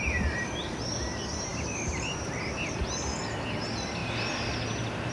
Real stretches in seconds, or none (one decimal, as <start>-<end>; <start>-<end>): 0.0-5.1